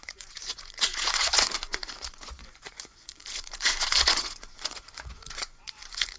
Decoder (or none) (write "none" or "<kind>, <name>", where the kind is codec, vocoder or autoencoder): vocoder, Vocos